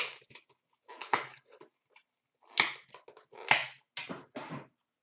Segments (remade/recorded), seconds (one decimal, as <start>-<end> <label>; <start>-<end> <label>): 0.0-1.0 recorded; 1.0-1.6 remade; 1.6-5.0 recorded